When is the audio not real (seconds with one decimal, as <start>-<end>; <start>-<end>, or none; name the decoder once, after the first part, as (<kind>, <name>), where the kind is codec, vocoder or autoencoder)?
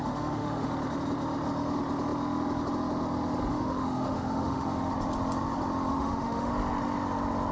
0.0-0.7 (autoencoder, DAC-VAE); 3.5-4.9; 5.9-6.5